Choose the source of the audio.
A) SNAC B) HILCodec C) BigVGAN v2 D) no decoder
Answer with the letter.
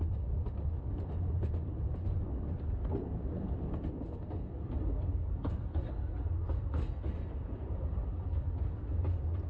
D